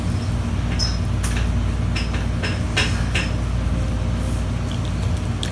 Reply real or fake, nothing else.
real